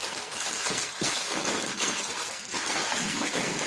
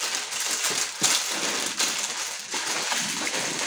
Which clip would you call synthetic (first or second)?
first